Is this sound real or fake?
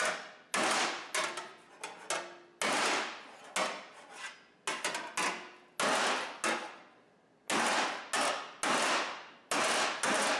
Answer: real